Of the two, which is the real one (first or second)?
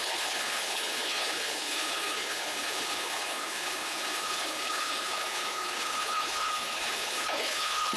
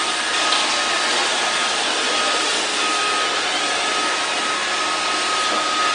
second